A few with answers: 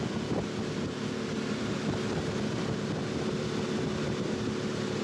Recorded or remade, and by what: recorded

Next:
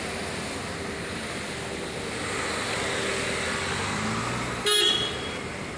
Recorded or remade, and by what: recorded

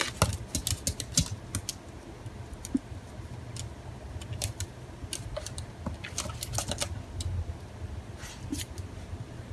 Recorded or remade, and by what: recorded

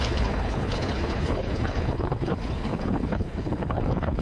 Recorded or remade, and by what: remade, codec, HILCodec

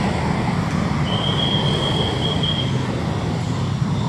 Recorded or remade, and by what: recorded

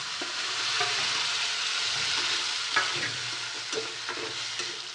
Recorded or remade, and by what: recorded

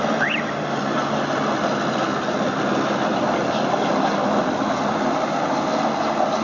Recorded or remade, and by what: recorded